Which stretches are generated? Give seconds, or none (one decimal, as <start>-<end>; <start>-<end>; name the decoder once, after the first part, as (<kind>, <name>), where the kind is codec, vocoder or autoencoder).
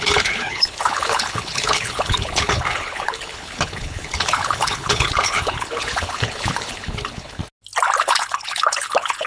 0.0-7.4 (codec, HILCodec); 8.0-9.3